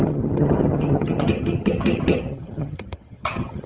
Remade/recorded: remade